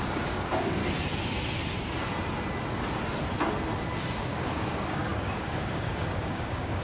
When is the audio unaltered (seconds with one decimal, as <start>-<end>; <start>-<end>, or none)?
0.8-4.2